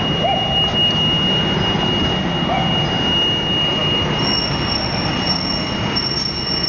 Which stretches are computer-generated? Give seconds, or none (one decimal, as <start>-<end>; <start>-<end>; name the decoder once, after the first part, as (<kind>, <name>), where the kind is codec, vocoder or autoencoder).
none